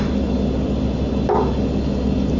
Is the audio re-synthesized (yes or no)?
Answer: no